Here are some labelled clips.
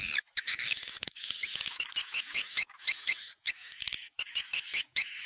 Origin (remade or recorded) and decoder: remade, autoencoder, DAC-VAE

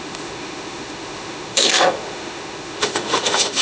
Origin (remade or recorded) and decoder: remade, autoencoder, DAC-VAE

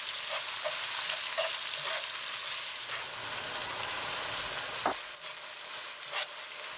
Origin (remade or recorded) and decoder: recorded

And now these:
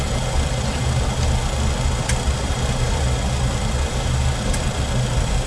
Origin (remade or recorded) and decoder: recorded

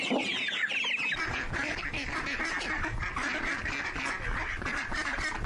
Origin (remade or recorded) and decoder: recorded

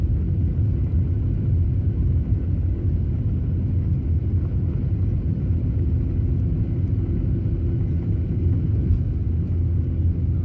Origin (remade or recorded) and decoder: recorded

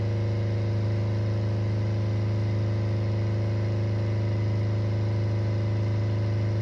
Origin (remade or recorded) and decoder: recorded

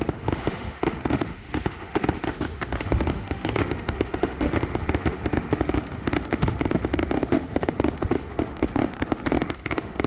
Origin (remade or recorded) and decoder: remade, autoencoder, DAC-VAE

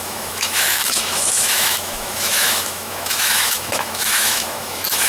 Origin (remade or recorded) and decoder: remade, autoencoder, DAC-VAE